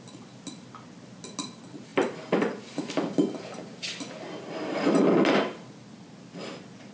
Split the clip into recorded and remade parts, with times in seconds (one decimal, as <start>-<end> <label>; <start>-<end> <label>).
0.0-6.9 recorded